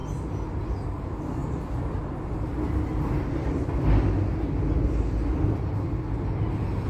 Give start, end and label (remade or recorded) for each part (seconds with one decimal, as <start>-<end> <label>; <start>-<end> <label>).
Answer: 0.0-6.9 recorded